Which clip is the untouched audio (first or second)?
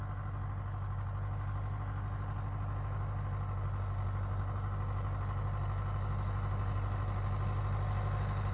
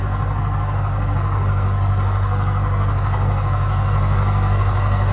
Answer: first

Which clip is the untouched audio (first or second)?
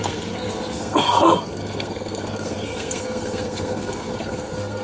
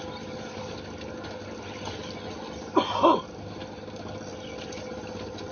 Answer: second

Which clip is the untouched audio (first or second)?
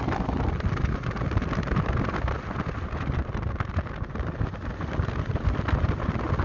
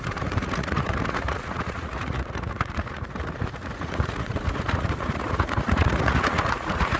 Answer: first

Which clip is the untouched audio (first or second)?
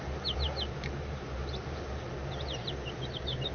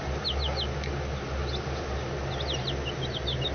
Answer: second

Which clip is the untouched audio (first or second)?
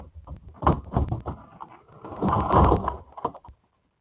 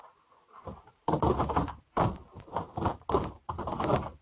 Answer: first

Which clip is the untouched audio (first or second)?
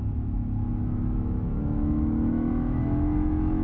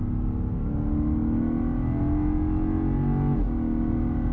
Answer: second